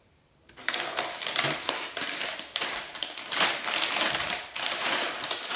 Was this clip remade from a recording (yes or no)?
yes